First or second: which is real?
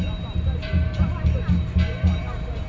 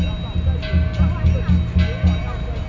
second